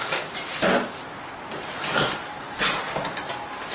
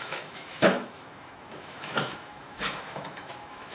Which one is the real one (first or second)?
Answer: first